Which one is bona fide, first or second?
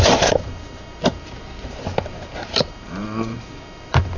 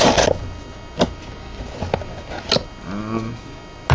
second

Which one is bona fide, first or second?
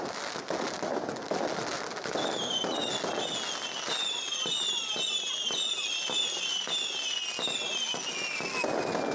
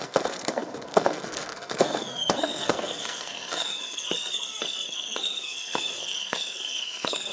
first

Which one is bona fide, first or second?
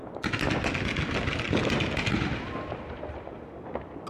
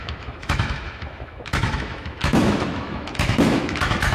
first